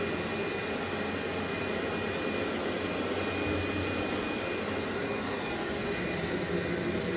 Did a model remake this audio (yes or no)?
no